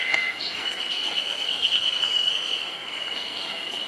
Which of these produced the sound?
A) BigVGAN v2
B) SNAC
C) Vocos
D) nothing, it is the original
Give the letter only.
B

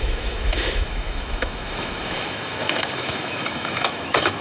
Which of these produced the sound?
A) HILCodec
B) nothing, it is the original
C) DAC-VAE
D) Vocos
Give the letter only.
C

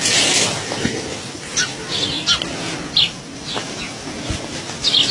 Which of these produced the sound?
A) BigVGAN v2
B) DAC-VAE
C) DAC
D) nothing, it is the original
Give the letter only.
D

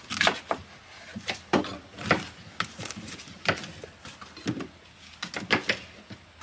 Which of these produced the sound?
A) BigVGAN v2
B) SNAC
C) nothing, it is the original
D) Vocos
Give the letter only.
C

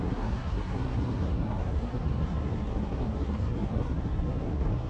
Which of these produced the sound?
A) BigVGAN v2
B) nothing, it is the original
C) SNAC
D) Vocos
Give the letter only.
C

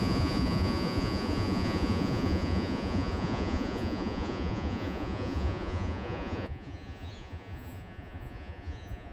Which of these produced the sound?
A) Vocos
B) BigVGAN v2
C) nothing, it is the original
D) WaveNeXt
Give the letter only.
A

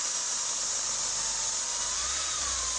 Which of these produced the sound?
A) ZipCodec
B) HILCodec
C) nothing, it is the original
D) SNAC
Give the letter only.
C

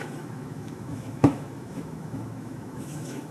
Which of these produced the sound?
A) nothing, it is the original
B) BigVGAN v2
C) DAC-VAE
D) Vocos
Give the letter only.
C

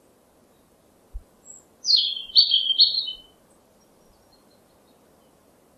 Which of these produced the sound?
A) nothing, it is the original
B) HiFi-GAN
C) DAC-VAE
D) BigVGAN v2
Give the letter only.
A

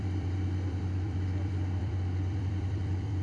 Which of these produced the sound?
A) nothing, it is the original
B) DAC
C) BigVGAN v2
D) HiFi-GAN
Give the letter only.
C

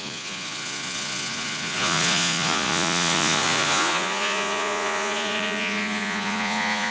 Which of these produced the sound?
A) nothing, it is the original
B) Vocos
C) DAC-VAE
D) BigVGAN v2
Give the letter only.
B